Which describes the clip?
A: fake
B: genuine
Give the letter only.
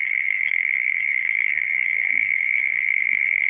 A